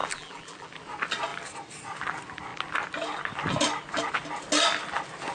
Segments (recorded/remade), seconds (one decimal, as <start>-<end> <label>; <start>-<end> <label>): 0.0-0.7 remade; 0.7-5.3 recorded